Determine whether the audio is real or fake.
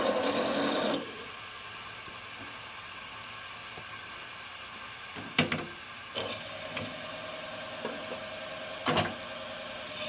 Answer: real